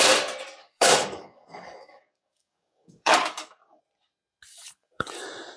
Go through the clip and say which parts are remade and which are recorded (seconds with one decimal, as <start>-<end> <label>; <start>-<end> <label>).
0.0-0.6 recorded; 0.6-3.8 remade; 3.8-4.5 recorded; 4.5-5.1 remade; 5.1-5.6 recorded